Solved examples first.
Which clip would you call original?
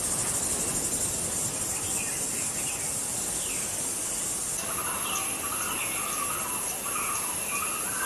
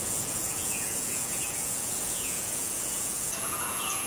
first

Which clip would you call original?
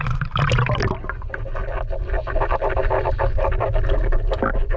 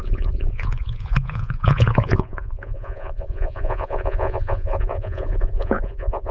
first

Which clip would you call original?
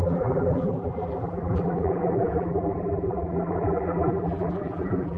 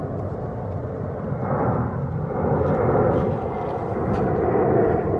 second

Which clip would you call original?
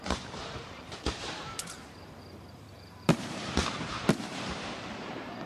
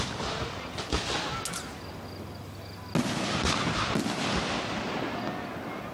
second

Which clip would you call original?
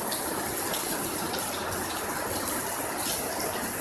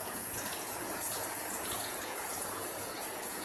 first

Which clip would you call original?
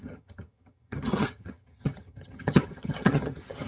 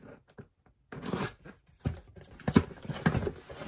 second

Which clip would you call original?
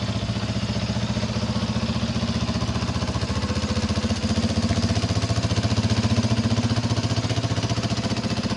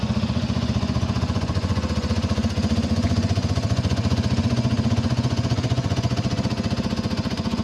first